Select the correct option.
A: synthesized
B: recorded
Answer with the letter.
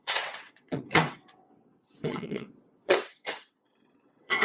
A